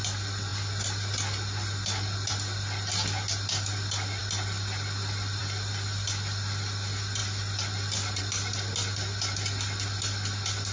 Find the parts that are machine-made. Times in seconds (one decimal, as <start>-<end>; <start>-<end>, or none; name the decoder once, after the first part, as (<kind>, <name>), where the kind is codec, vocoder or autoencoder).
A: none